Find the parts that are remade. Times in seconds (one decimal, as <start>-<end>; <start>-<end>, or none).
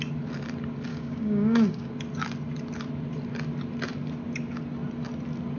0.9-1.9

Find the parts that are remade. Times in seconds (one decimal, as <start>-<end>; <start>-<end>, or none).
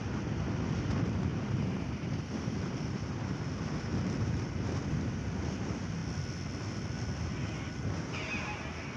1.3-2.2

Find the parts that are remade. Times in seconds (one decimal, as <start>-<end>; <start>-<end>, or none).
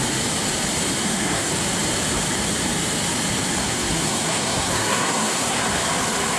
1.0-1.5; 3.6-5.6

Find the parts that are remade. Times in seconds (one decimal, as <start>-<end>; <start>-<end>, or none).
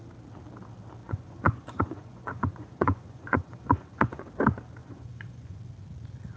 1.0-4.3; 4.8-5.6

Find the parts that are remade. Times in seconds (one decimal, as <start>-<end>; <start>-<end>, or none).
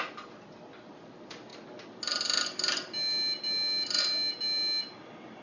none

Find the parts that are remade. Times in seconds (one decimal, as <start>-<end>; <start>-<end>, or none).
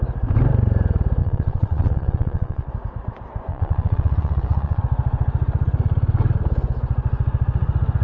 1.2-2.7; 3.5-4.8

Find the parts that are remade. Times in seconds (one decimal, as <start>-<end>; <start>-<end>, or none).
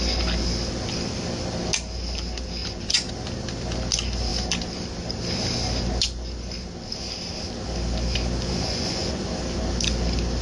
2.6-3.1; 8.5-9.3